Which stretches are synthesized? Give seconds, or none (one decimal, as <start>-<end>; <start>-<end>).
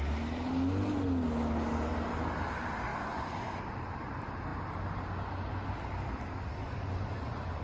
2.9-3.6; 6.6-7.6